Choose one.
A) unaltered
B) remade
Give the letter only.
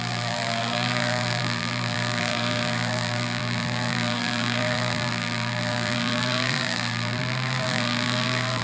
B